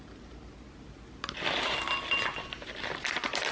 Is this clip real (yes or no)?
yes